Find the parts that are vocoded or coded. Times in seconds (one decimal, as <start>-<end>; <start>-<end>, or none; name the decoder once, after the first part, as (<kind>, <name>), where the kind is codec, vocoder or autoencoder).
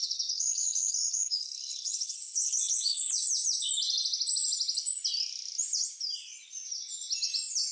0.0-3.2 (codec, HILCodec)